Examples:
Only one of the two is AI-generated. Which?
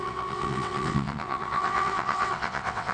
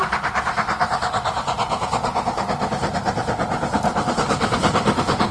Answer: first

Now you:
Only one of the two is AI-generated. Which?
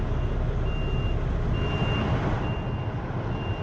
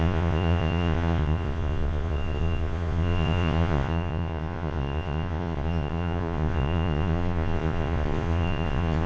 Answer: second